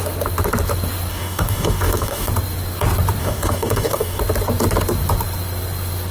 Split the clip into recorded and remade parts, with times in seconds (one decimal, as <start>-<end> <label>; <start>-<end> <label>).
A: 0.0-1.1 recorded; 1.1-2.3 remade; 2.3-3.2 recorded; 3.2-4.2 remade; 4.2-6.1 recorded

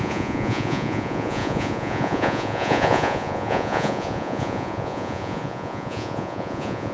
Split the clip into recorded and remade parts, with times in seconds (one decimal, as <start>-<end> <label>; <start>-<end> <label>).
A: 0.0-6.9 remade

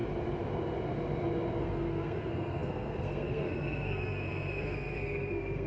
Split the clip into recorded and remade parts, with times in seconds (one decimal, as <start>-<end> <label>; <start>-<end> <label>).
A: 0.0-1.6 recorded; 1.6-5.7 remade

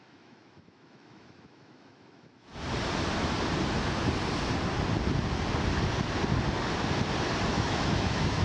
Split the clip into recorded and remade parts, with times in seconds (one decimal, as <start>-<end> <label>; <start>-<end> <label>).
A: 0.0-2.5 remade; 2.5-7.5 recorded; 7.5-8.4 remade

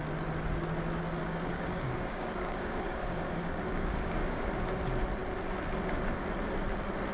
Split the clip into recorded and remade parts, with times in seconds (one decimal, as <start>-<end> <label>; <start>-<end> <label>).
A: 0.0-1.2 recorded; 1.2-4.5 remade; 4.5-7.1 recorded